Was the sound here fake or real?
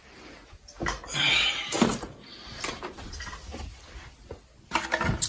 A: real